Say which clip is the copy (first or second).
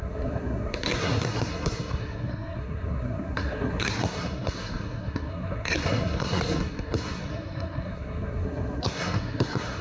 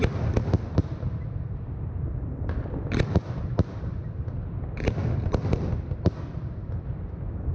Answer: first